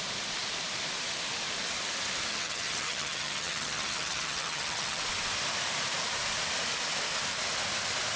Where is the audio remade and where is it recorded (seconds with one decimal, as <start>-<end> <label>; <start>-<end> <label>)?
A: 0.0-2.3 recorded; 2.3-5.0 remade; 5.0-8.2 recorded